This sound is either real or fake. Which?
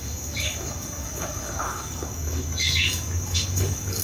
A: fake